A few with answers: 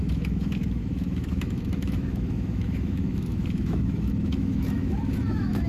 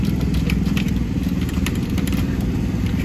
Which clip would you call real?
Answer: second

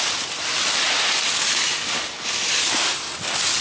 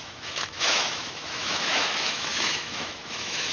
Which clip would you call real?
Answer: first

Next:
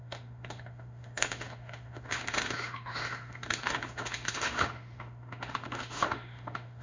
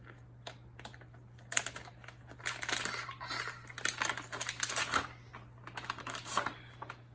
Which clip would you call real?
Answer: second